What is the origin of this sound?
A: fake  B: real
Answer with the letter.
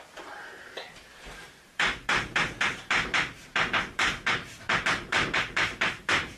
A